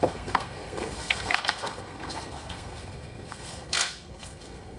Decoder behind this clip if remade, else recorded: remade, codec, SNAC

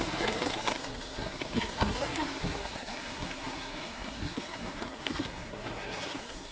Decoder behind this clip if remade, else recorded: remade, codec, SNAC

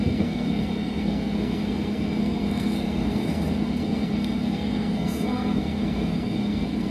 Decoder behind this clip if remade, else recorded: remade, codec, SNAC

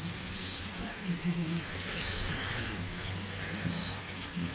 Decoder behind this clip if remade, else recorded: remade, codec, SNAC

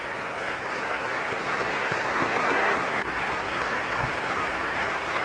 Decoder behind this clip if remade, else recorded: remade, codec, SNAC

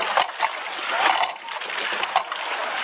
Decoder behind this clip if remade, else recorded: recorded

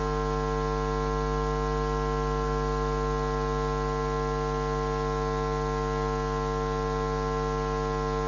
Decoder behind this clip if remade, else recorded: recorded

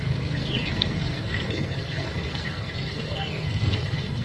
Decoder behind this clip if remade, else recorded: remade, codec, SNAC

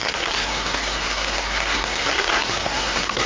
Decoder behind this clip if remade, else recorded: remade, codec, SNAC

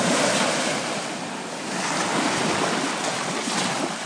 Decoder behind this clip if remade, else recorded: recorded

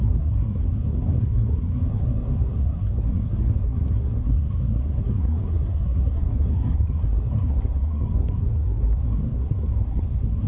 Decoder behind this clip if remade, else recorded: remade, codec, SNAC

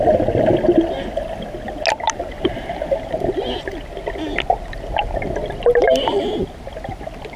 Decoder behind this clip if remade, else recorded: recorded